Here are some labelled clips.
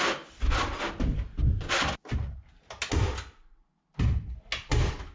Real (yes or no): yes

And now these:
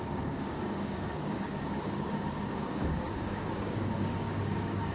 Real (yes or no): no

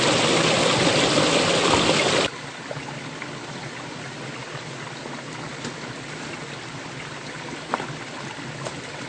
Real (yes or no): yes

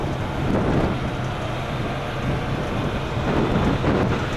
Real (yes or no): yes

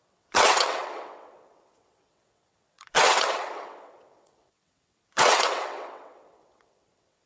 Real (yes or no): no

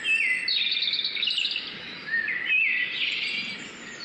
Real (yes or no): yes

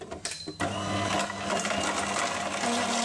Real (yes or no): yes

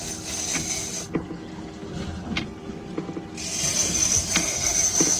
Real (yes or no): yes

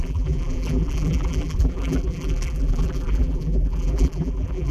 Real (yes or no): no